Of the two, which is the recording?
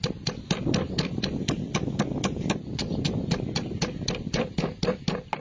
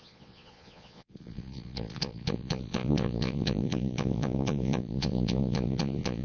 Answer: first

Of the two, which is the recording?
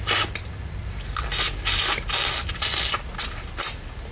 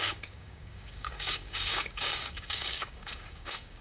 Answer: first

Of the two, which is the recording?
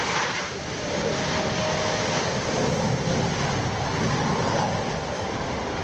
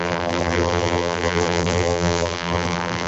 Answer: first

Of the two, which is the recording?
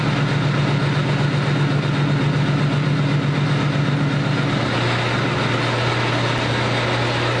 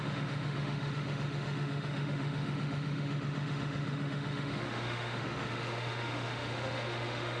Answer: first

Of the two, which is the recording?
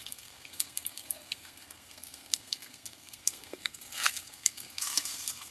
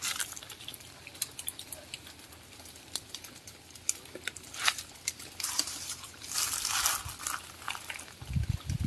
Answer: second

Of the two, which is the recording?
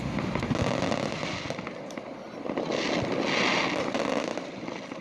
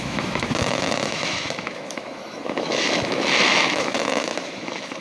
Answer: first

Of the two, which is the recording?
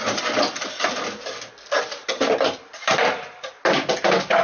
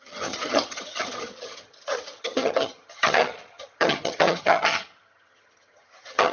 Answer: first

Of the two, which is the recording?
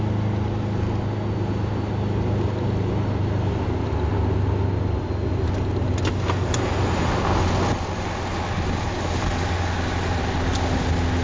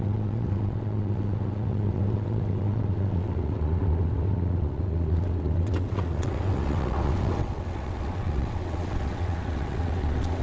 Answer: first